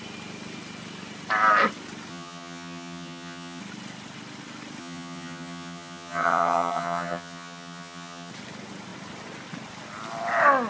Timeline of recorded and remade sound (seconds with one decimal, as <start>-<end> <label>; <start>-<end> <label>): 0.0-2.1 recorded; 2.1-3.6 remade; 3.6-4.8 recorded; 4.8-8.3 remade; 8.3-10.7 recorded

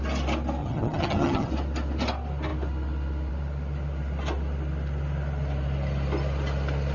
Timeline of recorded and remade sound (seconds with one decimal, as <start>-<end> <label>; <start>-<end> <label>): 0.0-0.6 recorded; 0.6-1.5 remade; 1.5-6.9 recorded

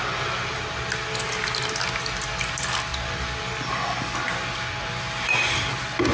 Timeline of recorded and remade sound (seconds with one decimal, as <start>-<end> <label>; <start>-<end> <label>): 0.0-6.1 recorded

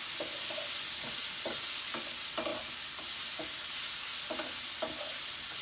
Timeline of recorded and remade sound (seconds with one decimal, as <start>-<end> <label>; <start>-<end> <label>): 0.0-5.6 recorded

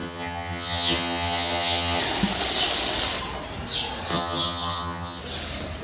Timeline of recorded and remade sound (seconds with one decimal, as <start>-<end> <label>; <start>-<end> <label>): 0.0-2.0 remade; 2.0-4.1 recorded; 4.1-5.2 remade; 5.2-5.8 recorded

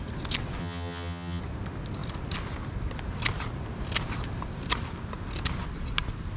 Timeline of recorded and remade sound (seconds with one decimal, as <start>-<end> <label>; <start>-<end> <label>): 0.0-0.6 recorded; 0.6-1.4 remade; 1.4-6.4 recorded

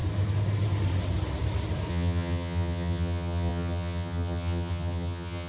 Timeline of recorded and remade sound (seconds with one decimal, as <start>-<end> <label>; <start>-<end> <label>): 0.0-1.9 recorded; 1.9-5.5 remade